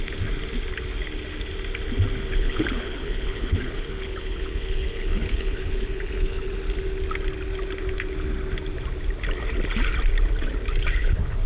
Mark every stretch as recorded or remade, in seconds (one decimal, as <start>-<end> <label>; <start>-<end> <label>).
0.0-2.3 recorded; 2.3-6.5 remade; 6.5-11.0 recorded; 11.0-11.5 remade